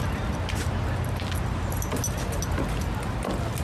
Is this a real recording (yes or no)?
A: yes